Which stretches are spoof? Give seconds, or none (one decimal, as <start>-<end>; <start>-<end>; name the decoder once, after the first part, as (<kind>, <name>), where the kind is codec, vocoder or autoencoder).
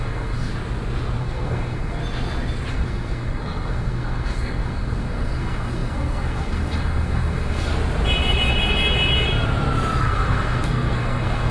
0.0-0.5 (codec, SNAC); 1.2-2.0; 2.7-7.7; 10.0-11.5